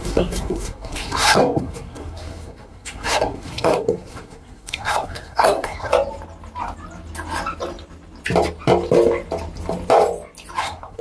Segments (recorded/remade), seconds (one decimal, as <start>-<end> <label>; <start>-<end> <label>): 0.0-5.9 remade; 5.9-10.6 recorded; 10.6-11.0 remade